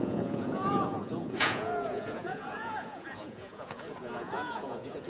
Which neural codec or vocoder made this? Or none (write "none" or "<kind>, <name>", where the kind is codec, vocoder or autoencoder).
vocoder, Vocos